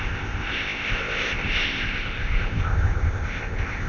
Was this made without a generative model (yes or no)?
no